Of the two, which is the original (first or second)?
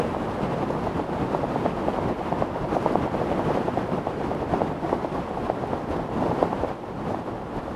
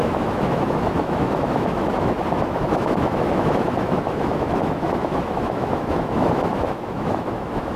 first